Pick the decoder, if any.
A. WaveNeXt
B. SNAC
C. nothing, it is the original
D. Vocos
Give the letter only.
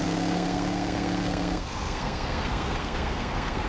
B